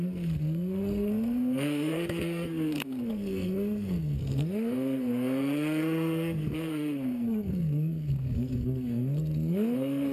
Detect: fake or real fake